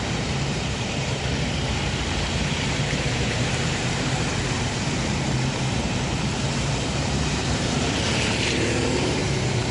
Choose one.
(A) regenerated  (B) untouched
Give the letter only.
A